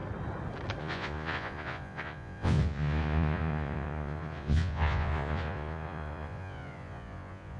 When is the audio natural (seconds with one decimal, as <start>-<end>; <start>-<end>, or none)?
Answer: 0.0-0.8